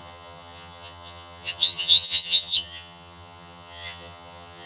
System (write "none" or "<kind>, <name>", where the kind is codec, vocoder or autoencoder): vocoder, HiFi-GAN